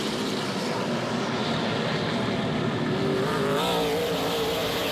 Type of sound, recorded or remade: recorded